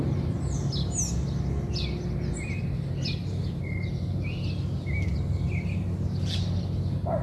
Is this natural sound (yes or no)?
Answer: yes